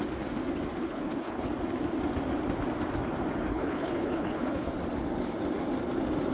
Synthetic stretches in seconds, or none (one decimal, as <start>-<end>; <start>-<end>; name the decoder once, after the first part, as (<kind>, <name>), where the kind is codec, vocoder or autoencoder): 0.8-1.5 (codec, HILCodec); 3.5-4.7